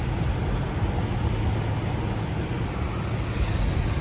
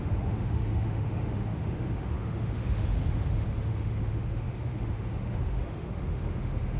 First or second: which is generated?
second